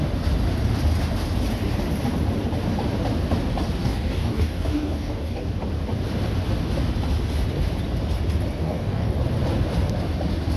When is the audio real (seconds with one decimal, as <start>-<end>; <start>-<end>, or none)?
0.0-3.8; 5.5-8.6; 9.1-10.6